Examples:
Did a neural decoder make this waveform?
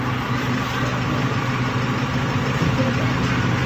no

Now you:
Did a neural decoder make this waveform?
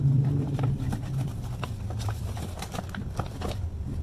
yes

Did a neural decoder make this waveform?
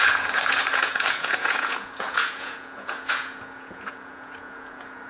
yes